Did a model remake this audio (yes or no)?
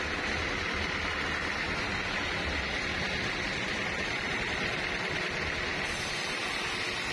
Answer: no